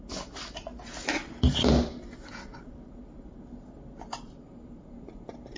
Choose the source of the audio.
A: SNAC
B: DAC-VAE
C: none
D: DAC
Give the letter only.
C